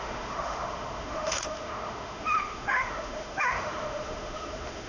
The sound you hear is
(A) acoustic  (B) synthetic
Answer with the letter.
B